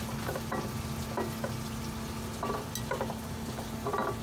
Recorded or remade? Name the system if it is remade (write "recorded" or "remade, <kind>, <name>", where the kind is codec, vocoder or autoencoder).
recorded